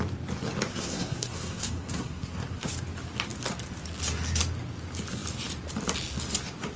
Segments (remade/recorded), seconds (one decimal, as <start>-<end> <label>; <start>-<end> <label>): 0.0-0.7 recorded; 0.7-2.7 remade; 2.7-6.8 recorded